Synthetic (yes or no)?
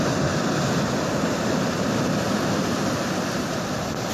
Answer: no